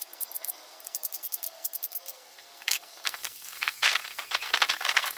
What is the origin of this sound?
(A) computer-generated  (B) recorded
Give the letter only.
A